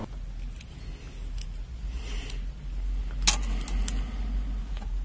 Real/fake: real